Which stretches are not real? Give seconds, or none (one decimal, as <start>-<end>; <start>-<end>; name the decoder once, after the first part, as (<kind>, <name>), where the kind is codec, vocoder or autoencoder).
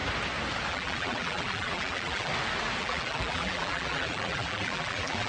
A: 0.7-2.3 (vocoder, BigVGAN v2); 2.8-5.3